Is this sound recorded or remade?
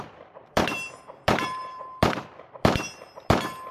remade